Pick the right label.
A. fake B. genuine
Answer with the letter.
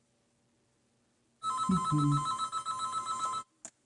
B